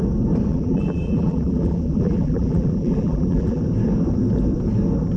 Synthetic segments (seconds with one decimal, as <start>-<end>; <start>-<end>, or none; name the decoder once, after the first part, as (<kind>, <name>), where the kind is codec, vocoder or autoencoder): 0.5-3.6 (vocoder, BigVGAN v2)